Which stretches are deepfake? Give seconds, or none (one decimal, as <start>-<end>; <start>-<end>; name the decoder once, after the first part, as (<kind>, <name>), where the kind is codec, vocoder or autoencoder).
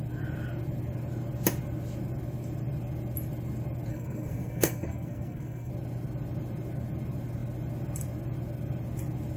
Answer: 3.9-5.7 (codec, SNAC)